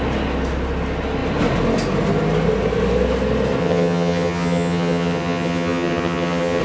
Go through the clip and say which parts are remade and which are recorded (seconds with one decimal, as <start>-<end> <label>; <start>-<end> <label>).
0.0-3.6 recorded; 3.6-6.6 remade